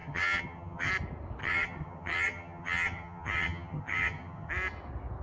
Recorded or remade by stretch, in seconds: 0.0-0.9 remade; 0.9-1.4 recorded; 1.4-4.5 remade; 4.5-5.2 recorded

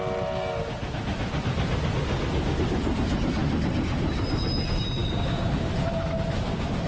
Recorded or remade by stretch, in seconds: 0.0-5.0 recorded; 5.0-5.7 remade; 5.7-6.9 recorded

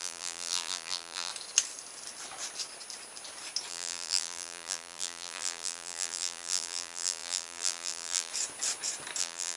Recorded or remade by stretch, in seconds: 0.0-1.3 remade; 1.3-3.7 recorded; 3.7-8.3 remade; 8.3-9.2 recorded; 9.2-9.6 remade